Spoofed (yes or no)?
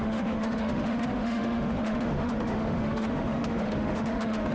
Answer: yes